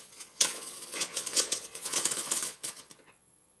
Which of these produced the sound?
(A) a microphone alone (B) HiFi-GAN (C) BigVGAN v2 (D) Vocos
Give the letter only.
D